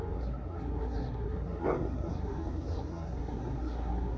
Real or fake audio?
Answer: fake